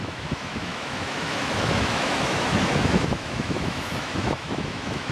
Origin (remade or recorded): remade